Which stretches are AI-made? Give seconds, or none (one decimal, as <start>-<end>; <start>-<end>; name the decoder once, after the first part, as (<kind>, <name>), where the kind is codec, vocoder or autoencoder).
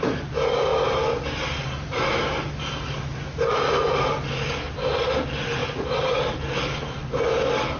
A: 5.6-6.3 (vocoder, BigVGAN v2)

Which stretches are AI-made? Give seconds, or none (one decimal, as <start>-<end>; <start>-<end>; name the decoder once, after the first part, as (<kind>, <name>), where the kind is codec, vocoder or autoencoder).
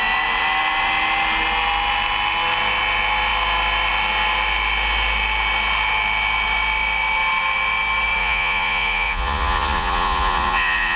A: 8.2-11.0 (vocoder, Vocos)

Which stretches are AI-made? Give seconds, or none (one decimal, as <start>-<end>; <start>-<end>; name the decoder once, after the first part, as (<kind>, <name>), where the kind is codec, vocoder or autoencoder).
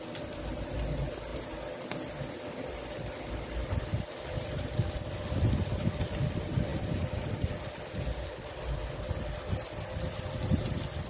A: none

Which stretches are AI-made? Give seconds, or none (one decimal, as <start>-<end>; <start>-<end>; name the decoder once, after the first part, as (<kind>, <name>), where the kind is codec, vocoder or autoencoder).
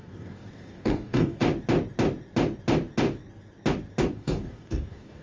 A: 0.0-1.4 (codec, DAC); 4.1-5.2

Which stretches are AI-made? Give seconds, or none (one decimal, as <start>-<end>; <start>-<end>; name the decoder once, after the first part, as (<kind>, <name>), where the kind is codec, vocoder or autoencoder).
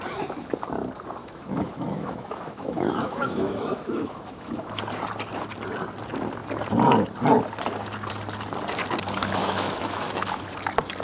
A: 1.2-4.8 (autoencoder, DAC-VAE); 9.4-10.4